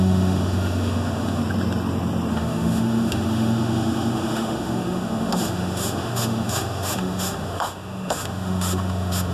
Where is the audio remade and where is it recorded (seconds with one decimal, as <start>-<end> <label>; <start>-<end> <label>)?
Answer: 0.0-1.4 remade; 1.4-2.3 recorded; 2.3-9.3 remade

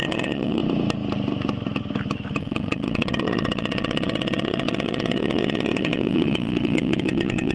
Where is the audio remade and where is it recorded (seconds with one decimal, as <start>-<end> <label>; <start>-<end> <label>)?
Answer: 0.0-0.6 remade; 0.6-2.4 recorded; 2.4-7.5 remade

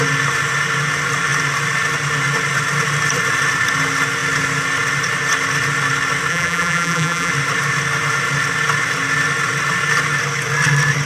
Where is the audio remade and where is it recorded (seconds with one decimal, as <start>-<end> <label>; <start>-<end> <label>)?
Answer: 0.0-6.3 recorded; 6.3-7.3 remade; 7.3-11.1 recorded

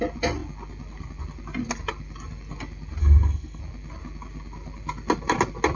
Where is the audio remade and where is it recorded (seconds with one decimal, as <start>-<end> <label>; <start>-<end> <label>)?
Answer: 0.0-3.0 recorded; 3.0-3.6 remade; 3.6-5.8 recorded

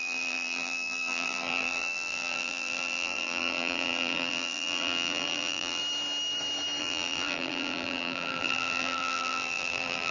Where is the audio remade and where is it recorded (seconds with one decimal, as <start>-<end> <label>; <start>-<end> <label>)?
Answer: 0.0-5.8 remade; 5.8-6.8 recorded; 6.8-10.1 remade

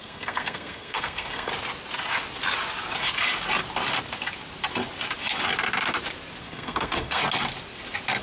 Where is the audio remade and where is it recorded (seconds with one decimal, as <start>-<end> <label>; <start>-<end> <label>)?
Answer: 0.0-1.5 remade; 1.5-6.4 recorded; 6.4-7.2 remade; 7.2-8.2 recorded

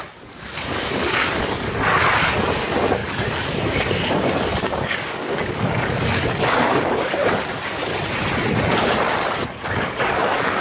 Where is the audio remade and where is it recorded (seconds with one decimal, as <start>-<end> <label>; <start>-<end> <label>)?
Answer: 0.0-7.9 remade; 7.9-9.3 recorded; 9.3-10.6 remade